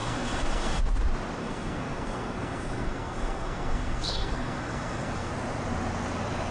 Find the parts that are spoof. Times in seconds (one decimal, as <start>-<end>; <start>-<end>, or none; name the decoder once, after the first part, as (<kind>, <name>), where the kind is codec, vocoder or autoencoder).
0.0-0.8 (codec, SNAC); 1.4-5.3